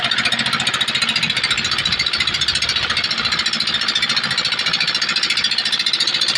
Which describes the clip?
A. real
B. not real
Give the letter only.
A